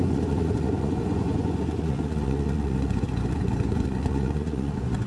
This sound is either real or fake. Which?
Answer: fake